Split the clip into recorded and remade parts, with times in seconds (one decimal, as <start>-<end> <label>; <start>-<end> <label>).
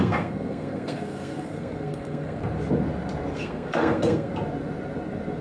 0.0-2.4 remade; 2.4-3.3 recorded; 3.3-4.3 remade; 4.3-5.4 recorded